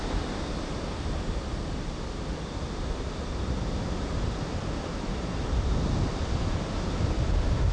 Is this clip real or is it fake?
real